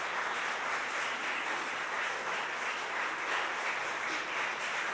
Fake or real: real